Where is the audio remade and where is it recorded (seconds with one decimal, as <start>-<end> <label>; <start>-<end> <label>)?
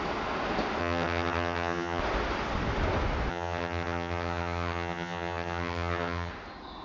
0.0-0.8 recorded; 0.8-2.0 remade; 2.0-3.3 recorded; 3.3-6.3 remade; 6.3-6.8 recorded